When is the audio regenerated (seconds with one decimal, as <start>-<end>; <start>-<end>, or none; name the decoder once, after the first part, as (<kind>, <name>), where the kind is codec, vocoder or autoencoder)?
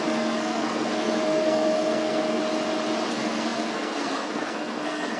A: 0.0-2.4 (codec, SNAC); 3.1-5.2